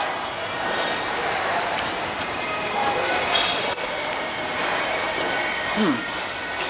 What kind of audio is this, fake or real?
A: fake